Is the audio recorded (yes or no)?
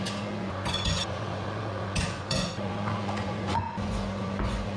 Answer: no